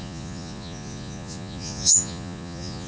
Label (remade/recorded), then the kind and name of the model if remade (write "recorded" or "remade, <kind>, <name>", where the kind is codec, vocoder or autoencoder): remade, vocoder, Vocos